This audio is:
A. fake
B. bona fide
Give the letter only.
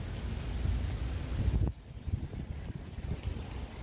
B